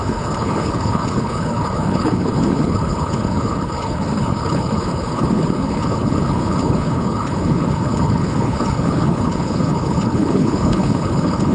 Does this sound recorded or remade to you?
remade